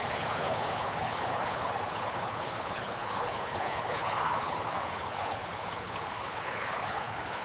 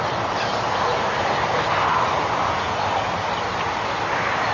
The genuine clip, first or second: second